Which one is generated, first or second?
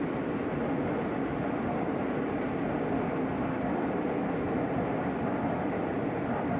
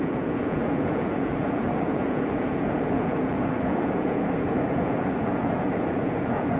second